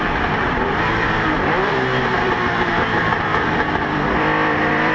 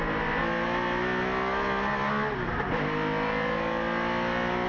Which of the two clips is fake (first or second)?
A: first